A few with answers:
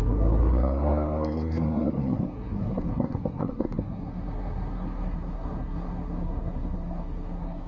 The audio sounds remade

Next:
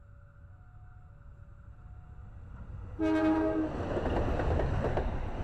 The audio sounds recorded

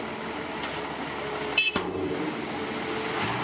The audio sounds recorded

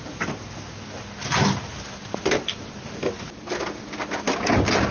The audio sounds recorded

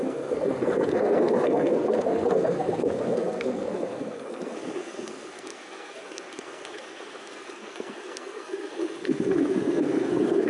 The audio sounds remade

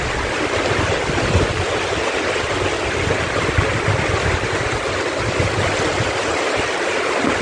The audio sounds recorded